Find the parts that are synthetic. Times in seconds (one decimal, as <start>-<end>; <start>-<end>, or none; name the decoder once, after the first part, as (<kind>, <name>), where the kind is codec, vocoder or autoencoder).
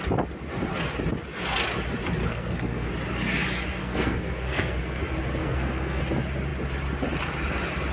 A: 2.2-2.9 (codec, SNAC); 3.8-5.0; 5.4-6.0